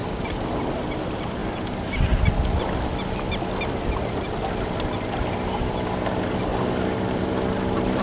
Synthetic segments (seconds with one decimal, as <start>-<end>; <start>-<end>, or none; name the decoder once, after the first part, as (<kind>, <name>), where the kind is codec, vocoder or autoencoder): none